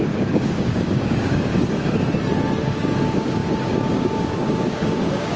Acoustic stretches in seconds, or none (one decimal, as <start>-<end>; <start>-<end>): 1.5-2.6